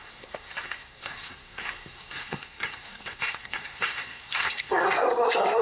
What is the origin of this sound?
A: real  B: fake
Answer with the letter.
B